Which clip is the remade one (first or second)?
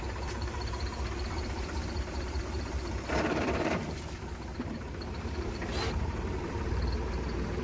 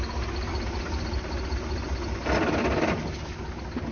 first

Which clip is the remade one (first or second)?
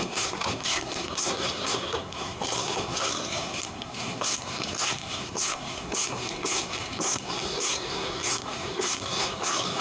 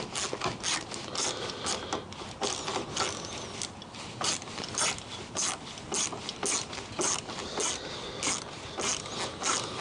first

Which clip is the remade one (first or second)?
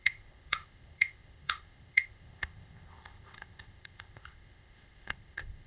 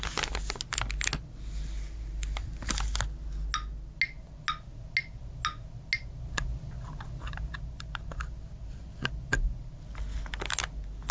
first